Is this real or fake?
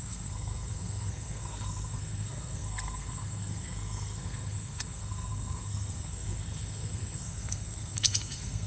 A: fake